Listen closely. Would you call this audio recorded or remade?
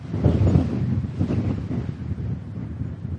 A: recorded